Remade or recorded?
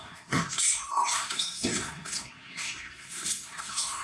remade